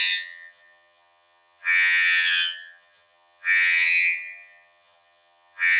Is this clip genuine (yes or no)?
no